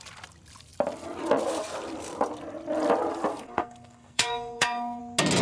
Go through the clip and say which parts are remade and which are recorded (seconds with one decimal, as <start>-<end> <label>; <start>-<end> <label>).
0.0-3.3 recorded; 3.3-5.0 remade; 5.0-5.4 recorded